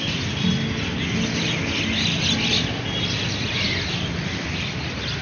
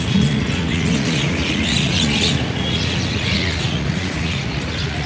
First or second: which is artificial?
second